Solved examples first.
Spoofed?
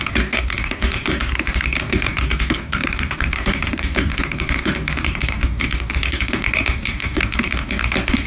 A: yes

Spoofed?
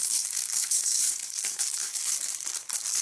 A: yes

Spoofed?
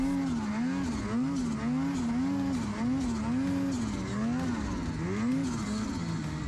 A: no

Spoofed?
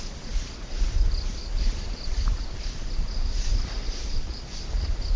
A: no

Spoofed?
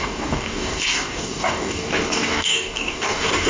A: yes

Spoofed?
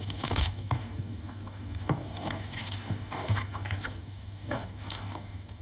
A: yes